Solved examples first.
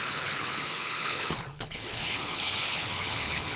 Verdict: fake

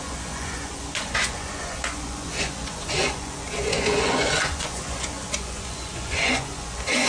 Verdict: fake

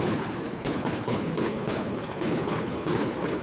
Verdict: fake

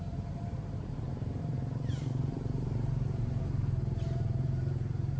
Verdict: fake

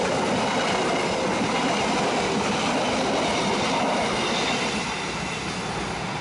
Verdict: real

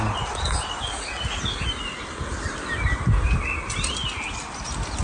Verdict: real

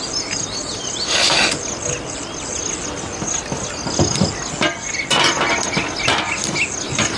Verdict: real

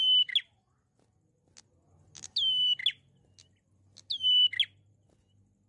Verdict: real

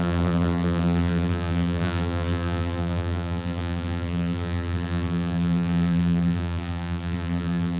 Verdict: fake